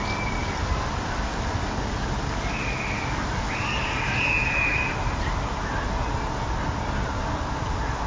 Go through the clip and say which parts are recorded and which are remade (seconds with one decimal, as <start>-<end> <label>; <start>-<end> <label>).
0.0-8.1 recorded